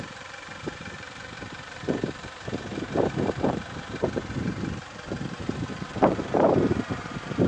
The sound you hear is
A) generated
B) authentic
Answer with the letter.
A